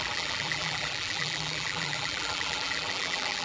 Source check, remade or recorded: remade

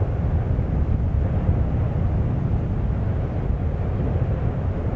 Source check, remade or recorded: recorded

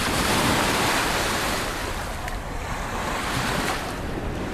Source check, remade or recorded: remade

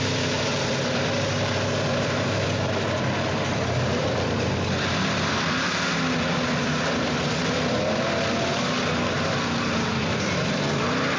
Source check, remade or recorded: remade